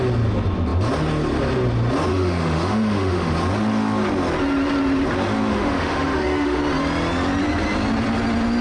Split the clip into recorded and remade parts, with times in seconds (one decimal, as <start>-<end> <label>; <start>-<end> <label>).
0.0-2.1 recorded; 2.1-3.3 remade; 3.3-5.5 recorded; 5.5-6.6 remade; 6.6-8.6 recorded